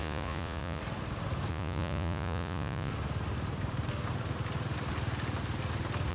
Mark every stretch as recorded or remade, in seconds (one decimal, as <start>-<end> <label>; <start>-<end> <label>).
0.0-0.8 remade; 0.8-1.5 recorded; 1.5-2.9 remade; 2.9-6.1 recorded